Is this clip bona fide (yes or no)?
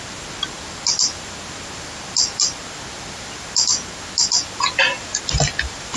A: yes